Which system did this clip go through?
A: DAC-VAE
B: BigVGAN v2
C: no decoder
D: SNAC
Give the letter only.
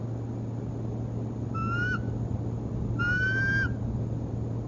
C